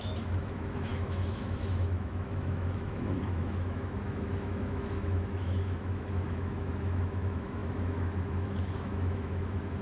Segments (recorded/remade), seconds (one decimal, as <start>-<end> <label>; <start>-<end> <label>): 0.0-9.8 remade